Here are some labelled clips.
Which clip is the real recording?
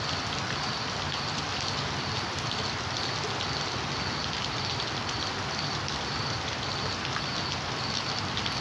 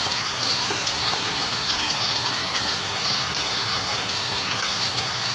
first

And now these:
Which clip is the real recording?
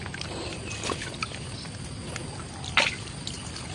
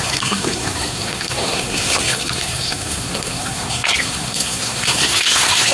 first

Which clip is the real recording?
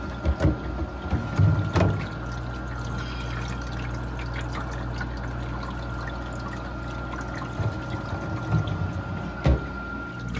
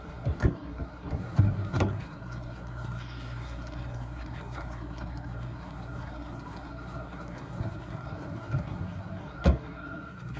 first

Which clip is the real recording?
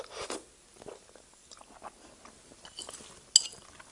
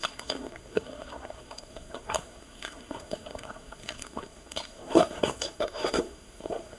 first